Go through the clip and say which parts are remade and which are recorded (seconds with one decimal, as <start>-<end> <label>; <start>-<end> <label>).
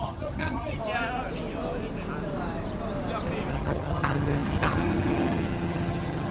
0.0-0.8 remade; 0.8-3.5 recorded; 3.5-6.3 remade